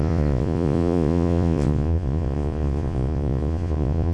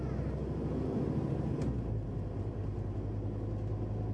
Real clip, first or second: second